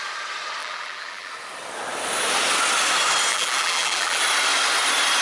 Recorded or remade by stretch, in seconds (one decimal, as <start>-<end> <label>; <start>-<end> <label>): 0.0-0.6 recorded; 0.6-1.3 remade; 1.3-3.3 recorded; 3.3-4.2 remade; 4.2-5.2 recorded